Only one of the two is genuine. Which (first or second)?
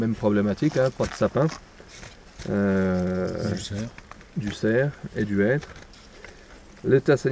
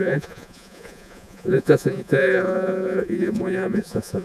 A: first